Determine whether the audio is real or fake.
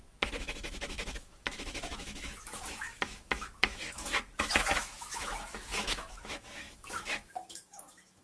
fake